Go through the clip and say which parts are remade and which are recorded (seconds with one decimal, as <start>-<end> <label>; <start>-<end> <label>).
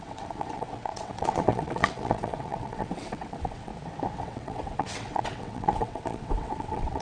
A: 0.0-3.7 remade; 3.7-4.2 recorded; 4.2-7.0 remade